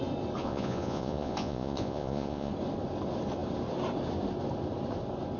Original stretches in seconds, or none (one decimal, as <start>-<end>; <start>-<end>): 0.0-0.4; 2.5-5.4